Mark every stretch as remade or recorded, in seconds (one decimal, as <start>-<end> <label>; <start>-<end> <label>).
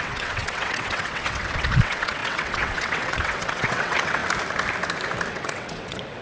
0.0-4.2 remade; 4.2-5.3 recorded; 5.3-6.2 remade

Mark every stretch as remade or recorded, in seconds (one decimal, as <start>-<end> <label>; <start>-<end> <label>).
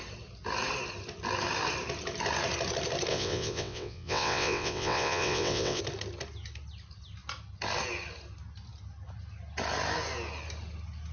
0.0-3.1 recorded; 3.1-5.8 remade; 5.8-11.1 recorded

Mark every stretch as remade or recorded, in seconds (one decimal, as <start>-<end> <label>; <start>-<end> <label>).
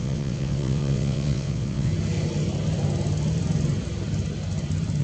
0.0-1.9 remade; 1.9-5.0 recorded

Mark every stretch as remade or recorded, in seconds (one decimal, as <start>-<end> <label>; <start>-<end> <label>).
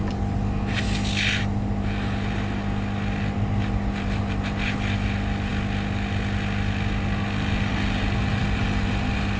0.0-9.4 recorded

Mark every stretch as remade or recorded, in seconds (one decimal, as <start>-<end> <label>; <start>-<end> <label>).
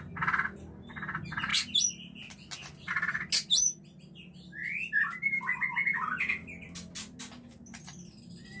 0.0-8.6 recorded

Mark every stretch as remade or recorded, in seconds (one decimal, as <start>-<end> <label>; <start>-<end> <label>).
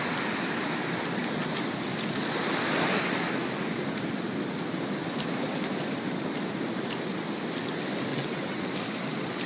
0.0-8.1 recorded; 8.1-8.6 remade; 8.6-9.5 recorded